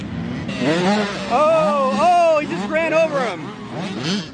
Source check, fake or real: real